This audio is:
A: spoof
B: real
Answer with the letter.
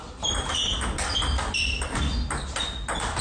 B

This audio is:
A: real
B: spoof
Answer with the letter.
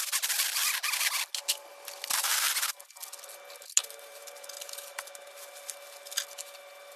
A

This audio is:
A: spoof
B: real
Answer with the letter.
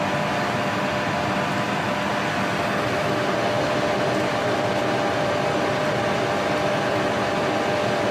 B